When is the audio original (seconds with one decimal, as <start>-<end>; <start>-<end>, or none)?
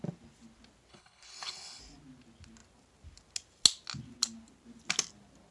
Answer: 0.0-0.9; 1.8-5.5